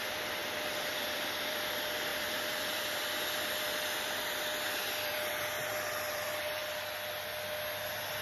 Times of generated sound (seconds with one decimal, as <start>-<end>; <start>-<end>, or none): 0.0-6.6